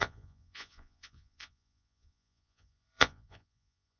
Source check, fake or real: fake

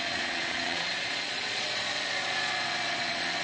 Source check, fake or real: fake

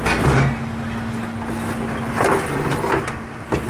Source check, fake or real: real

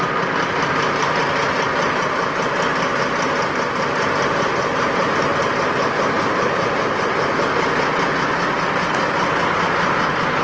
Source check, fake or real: real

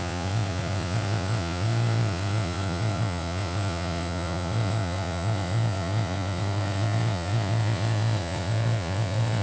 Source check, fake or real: fake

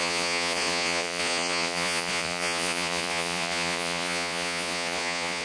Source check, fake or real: fake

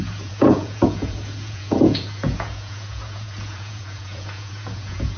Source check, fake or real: fake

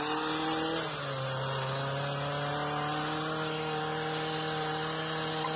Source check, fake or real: real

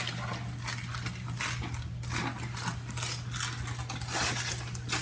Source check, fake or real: real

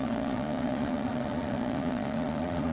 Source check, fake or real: fake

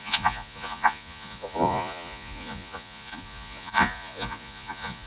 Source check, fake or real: fake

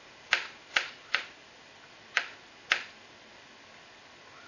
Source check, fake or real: real